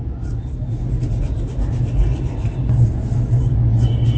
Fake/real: real